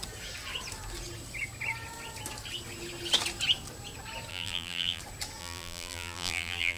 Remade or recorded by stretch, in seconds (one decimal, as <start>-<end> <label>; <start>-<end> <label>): 0.0-4.3 recorded; 4.3-5.0 remade; 5.0-5.4 recorded; 5.4-6.8 remade